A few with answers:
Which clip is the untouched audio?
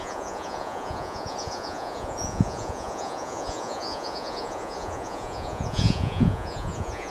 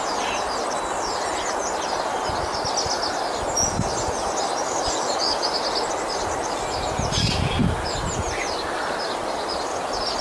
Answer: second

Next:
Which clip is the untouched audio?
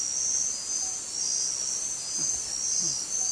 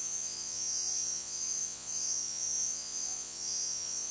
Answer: first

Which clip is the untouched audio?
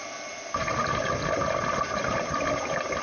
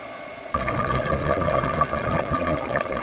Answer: first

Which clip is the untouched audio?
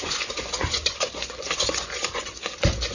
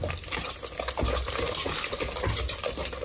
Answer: second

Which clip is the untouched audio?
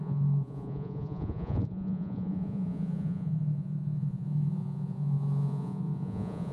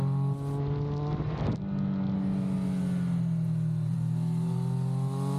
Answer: second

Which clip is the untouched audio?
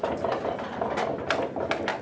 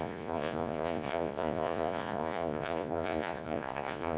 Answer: first